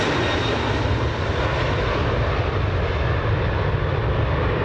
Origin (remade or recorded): recorded